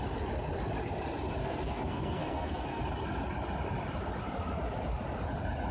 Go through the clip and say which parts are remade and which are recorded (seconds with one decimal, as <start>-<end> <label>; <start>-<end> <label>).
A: 0.0-1.4 recorded; 1.4-2.8 remade; 2.8-5.7 recorded